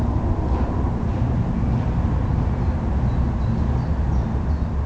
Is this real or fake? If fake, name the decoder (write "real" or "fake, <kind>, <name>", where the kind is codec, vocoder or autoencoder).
real